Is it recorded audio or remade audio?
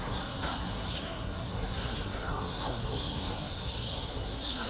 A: remade